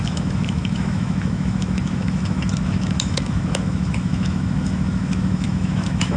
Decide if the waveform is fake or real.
fake